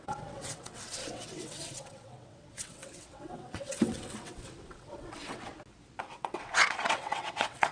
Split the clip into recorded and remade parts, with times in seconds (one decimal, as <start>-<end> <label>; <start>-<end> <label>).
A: 0.0-5.5 remade; 5.5-6.0 recorded; 6.0-7.7 remade